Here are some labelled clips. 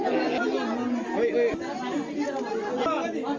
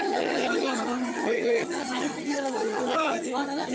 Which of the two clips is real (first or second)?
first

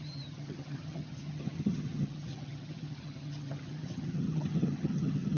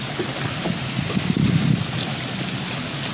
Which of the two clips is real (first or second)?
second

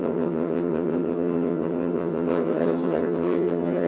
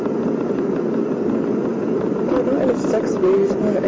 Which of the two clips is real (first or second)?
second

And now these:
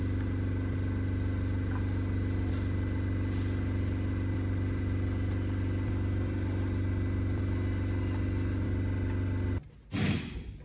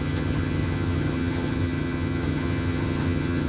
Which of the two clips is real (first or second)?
first